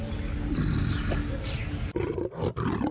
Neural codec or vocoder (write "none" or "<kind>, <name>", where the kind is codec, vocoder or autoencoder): none